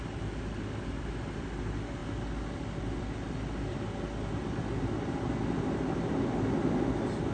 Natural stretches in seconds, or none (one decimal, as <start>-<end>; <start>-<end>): 0.0-7.3